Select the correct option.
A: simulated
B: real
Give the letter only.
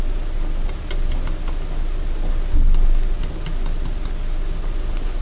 B